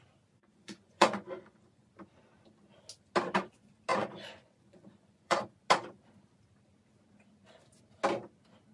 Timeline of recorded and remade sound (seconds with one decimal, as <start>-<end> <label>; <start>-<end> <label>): 0.0-0.4 recorded; 0.4-1.9 remade; 1.9-3.9 recorded; 3.9-5.4 remade; 5.4-8.7 recorded